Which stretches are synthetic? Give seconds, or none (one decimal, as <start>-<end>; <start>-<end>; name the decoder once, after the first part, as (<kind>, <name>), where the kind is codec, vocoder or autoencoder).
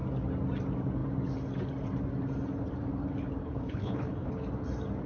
3.4-4.3 (codec, HILCodec)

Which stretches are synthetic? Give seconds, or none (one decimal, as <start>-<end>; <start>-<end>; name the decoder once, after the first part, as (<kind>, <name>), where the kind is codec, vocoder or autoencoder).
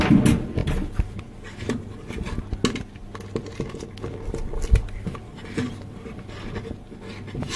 5.4-6.2 (vocoder, BigVGAN v2)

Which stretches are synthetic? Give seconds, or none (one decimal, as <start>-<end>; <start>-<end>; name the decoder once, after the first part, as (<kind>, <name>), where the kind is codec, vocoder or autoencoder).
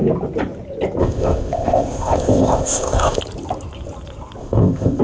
1.0-3.2 (codec, ZipCodec); 4.4-5.0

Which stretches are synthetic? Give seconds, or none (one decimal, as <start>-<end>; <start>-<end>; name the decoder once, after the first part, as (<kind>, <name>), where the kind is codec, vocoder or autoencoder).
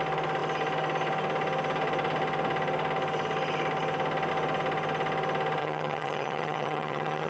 5.6-7.3 (vocoder, HiFi-GAN)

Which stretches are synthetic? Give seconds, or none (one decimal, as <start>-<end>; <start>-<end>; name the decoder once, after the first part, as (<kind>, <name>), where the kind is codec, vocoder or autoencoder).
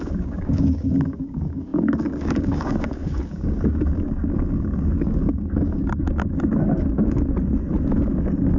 0.0-6.5 (codec, DAC); 7.9-8.6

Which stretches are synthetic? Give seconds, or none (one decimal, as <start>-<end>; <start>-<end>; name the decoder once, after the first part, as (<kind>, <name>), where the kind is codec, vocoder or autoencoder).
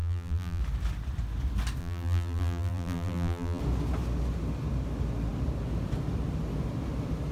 0.0-0.6 (vocoder, BigVGAN v2); 1.8-3.6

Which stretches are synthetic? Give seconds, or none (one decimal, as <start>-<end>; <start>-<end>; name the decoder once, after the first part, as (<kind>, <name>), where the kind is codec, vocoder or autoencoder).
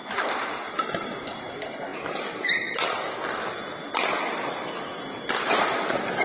0.6-1.9 (vocoder, BigVGAN v2); 5.5-6.2